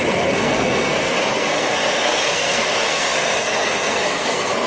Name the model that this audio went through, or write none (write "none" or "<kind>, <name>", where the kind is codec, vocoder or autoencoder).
codec, SNAC